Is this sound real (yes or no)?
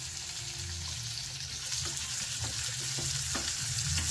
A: yes